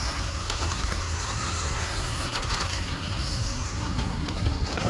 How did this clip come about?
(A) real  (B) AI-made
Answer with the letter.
B